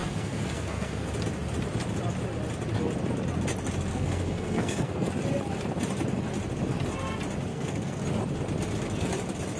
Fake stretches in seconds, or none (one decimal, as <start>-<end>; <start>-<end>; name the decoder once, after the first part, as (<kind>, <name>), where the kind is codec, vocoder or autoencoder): 0.0-1.1 (codec, SNAC); 3.9-5.1; 7.5-8.0